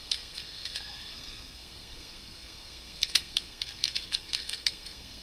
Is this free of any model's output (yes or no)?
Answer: no